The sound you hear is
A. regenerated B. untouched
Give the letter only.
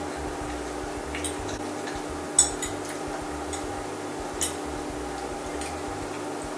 B